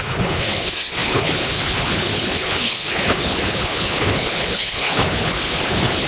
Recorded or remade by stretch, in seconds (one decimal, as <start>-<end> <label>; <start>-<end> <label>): 0.0-6.1 remade